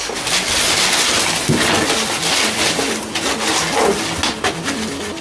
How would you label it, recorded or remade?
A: recorded